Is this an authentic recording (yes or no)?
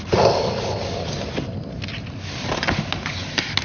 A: yes